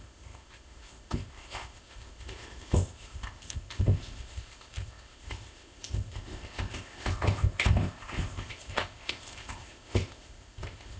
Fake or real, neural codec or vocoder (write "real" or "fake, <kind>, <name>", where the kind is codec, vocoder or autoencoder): fake, codec, ZipCodec